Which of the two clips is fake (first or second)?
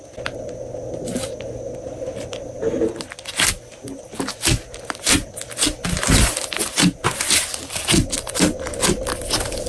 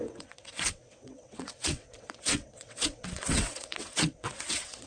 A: second